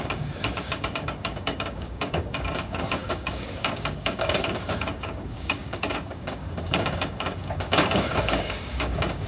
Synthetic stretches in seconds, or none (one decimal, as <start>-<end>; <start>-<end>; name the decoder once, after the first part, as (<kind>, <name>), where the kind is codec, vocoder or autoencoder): 0.0-9.3 (codec, DAC)